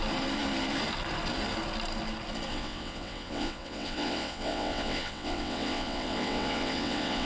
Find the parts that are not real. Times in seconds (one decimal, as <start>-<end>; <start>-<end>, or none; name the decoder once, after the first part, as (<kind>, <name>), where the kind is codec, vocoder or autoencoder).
2.5-7.3 (vocoder, WaveNeXt)